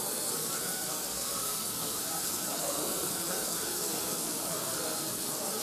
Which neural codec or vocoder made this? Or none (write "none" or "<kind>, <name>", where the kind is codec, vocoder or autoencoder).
codec, SNAC